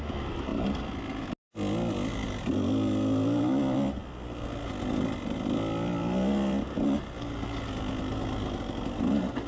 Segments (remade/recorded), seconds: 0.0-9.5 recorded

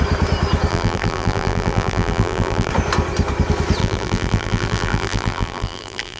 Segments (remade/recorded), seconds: 0.0-0.7 recorded; 0.7-2.7 remade; 2.7-3.8 recorded; 3.8-6.2 remade

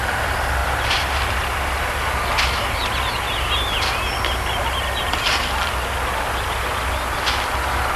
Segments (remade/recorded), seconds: 0.0-0.6 recorded; 0.6-1.1 remade; 1.1-8.0 recorded

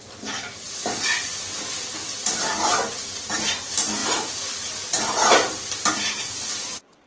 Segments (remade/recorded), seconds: 0.0-2.0 recorded; 2.0-2.6 remade; 2.6-4.0 recorded; 4.0-7.1 remade

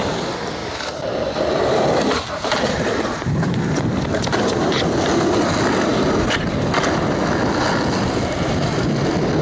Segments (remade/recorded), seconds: 0.0-0.6 recorded; 0.6-4.7 remade; 4.7-9.4 recorded

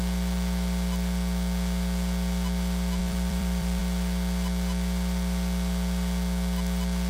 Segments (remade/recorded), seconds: 0.0-3.0 recorded; 3.0-3.8 remade; 3.8-7.1 recorded

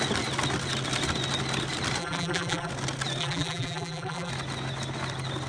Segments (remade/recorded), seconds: 0.0-2.0 recorded; 2.0-2.7 remade; 2.7-3.2 recorded; 3.2-4.3 remade; 4.3-5.5 recorded